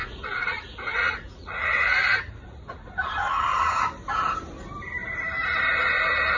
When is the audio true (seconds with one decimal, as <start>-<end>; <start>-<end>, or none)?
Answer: 3.8-6.4

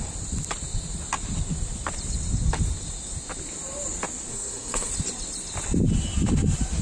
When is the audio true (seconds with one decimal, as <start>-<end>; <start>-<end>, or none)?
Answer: 0.0-4.3; 4.9-6.8

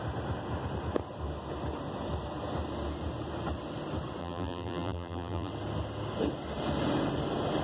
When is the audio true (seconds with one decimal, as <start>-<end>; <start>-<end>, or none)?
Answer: 0.0-4.2; 5.5-7.6

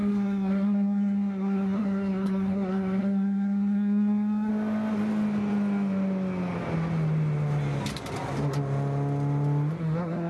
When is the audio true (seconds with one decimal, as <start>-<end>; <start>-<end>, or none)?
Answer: 4.5-9.8

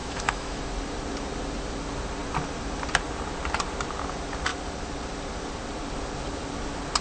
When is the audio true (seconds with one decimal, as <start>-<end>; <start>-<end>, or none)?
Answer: 0.6-7.0

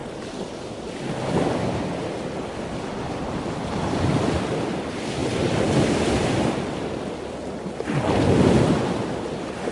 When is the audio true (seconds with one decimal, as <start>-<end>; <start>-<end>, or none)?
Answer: 0.0-9.7